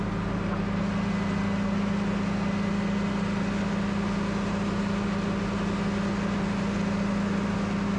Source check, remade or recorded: recorded